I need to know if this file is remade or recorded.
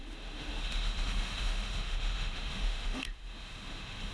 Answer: remade